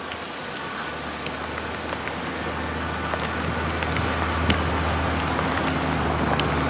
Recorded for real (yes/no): yes